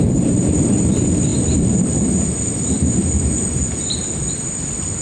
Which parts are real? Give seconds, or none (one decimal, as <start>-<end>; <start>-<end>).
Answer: 1.3-4.3